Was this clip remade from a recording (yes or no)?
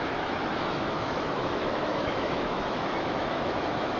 yes